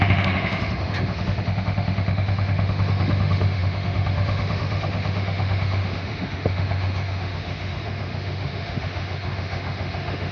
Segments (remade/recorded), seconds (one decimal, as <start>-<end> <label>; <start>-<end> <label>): 0.0-10.3 remade